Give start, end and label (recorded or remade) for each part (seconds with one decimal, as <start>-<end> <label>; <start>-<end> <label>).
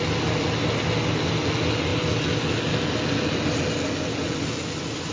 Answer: 0.0-5.1 recorded